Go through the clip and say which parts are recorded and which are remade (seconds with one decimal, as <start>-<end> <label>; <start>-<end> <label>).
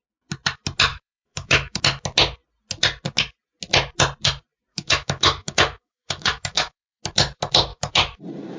0.0-0.9 recorded; 0.9-1.8 remade; 1.8-4.7 recorded; 4.7-7.0 remade; 7.0-7.7 recorded; 7.7-8.2 remade; 8.2-8.6 recorded